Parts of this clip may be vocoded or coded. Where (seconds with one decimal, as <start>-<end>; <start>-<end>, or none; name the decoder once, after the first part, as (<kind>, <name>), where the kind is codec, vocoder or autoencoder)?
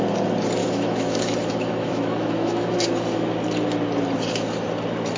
0.6-2.7 (autoencoder, DAC-VAE)